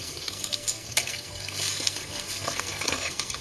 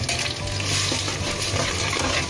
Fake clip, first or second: first